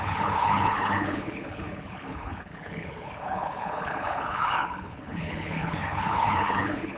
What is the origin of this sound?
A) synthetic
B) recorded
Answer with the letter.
A